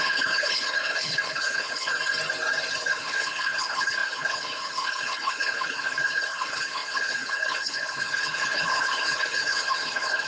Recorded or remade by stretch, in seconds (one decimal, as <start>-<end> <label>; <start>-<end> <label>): 0.0-1.9 remade; 1.9-2.9 recorded; 2.9-10.3 remade